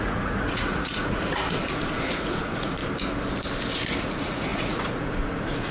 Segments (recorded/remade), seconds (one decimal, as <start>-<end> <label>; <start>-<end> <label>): 0.0-2.8 remade; 2.8-4.0 recorded; 4.0-5.7 remade